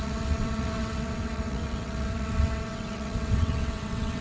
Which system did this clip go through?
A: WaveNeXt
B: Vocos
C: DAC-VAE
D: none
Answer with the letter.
A